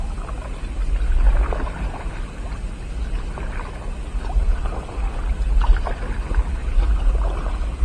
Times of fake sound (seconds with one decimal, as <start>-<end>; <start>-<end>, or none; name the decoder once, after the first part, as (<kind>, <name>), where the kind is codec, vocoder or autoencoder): none